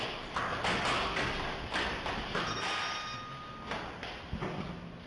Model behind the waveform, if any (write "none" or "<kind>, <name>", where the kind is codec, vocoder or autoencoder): none